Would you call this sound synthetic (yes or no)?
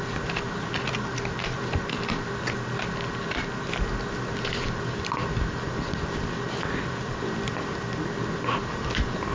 no